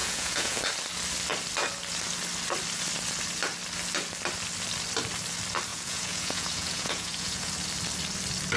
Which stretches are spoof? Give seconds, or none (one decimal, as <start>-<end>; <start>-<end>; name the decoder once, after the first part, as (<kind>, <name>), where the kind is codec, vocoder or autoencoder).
0.0-0.6 (vocoder, Vocos); 5.7-7.5